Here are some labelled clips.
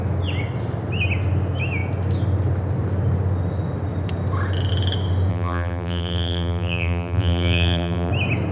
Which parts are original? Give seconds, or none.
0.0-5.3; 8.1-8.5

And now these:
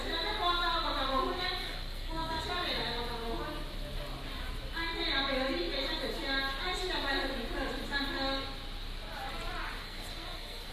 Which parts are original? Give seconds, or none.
0.0-1.6; 2.4-9.8

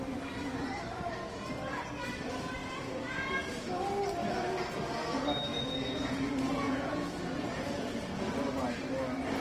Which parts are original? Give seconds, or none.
0.0-2.6; 3.1-5.5; 8.1-9.4